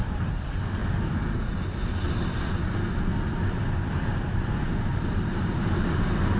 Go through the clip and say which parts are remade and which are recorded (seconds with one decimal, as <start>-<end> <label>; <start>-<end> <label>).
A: 0.0-6.4 recorded